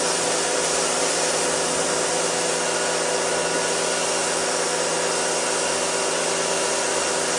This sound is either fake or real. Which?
real